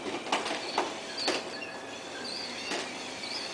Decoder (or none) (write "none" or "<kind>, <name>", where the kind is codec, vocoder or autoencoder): none